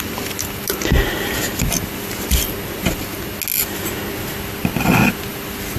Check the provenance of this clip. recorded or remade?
recorded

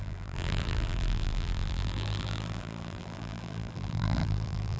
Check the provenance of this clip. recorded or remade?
remade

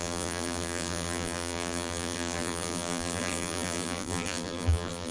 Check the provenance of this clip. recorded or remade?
remade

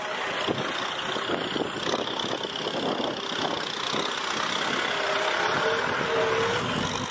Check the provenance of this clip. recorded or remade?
recorded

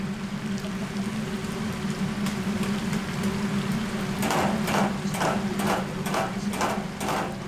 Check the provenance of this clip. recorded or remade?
recorded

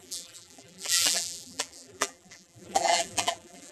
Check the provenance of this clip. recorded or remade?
remade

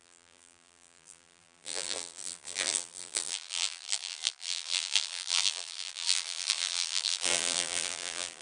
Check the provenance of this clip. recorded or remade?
remade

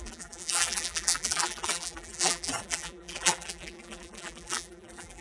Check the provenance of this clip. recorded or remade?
remade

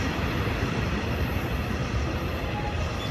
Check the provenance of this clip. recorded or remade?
remade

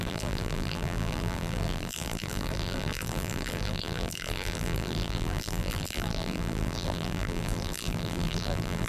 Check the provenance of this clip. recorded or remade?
remade